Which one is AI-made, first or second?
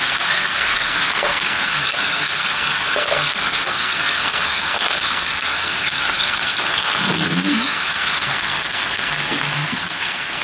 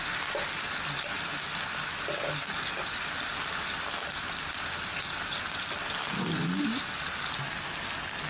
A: first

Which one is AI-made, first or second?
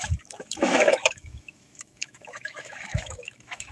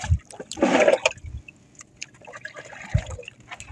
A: first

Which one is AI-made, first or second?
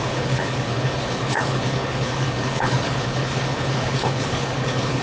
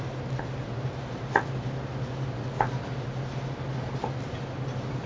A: first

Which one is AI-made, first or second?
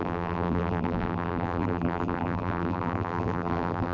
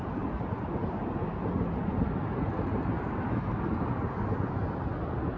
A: first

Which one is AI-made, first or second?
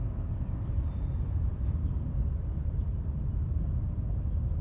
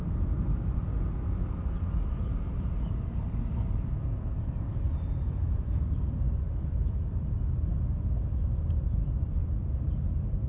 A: first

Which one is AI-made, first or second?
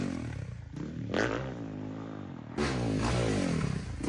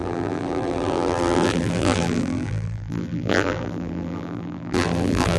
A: second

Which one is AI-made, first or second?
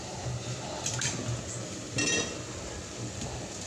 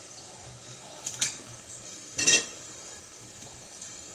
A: second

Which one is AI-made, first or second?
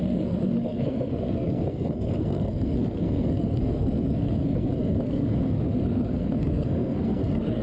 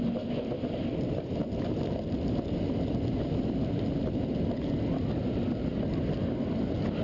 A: first